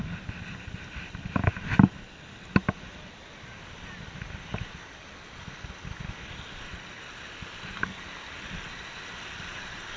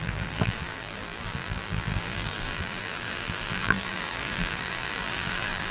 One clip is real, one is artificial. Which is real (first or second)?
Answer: first